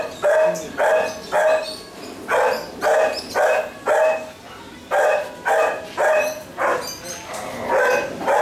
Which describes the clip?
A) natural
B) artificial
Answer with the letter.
A